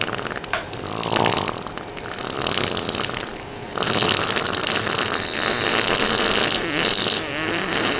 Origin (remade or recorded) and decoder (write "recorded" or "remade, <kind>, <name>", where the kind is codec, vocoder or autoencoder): recorded